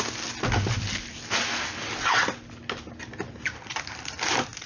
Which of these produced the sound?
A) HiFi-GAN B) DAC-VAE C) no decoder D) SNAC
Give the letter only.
C